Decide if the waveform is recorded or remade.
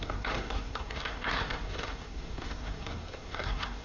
remade